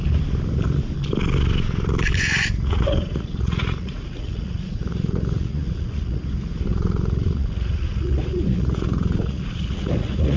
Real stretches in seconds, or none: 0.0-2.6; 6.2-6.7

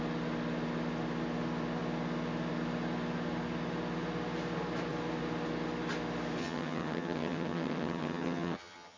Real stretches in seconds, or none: 0.0-6.4

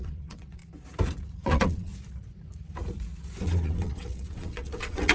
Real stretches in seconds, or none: 0.6-1.4; 1.9-3.4

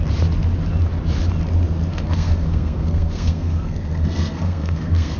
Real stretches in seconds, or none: 0.0-1.9

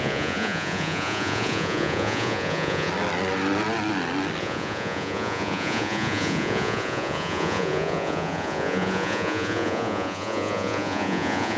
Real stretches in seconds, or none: 2.9-4.4

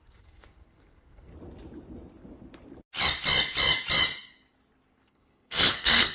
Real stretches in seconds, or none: 1.3-5.0

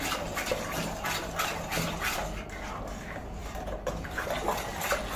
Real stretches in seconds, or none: 0.0-1.7; 2.2-5.2